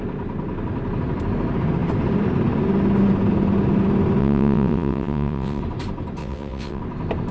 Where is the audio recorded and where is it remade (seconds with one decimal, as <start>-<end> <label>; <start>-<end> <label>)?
0.0-4.2 recorded; 4.2-5.6 remade; 5.6-6.2 recorded; 6.2-6.8 remade; 6.8-7.3 recorded